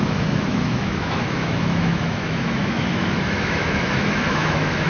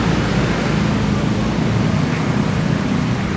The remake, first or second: first